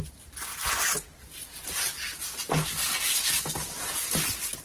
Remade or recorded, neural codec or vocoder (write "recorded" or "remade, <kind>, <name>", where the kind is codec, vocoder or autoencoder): recorded